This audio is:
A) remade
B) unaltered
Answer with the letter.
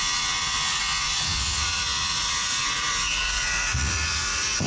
A